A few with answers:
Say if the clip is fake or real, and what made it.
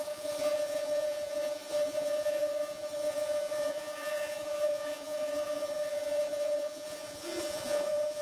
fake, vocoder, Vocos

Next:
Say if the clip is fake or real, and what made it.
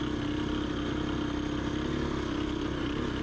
real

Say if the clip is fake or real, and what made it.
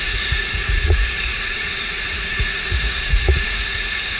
fake, vocoder, Vocos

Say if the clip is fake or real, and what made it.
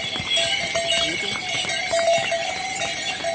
real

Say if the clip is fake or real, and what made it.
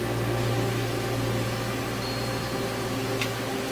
real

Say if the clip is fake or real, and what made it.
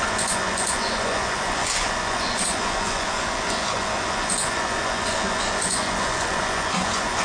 fake, vocoder, Vocos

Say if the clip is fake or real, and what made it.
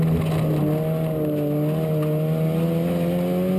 real